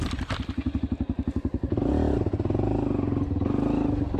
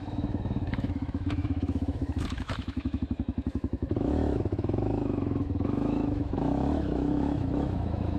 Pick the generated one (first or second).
second